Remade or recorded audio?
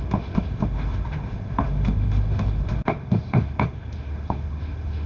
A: remade